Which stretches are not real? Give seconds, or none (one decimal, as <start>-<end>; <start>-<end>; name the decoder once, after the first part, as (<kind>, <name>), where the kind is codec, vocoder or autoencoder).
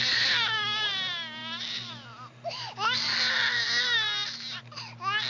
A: none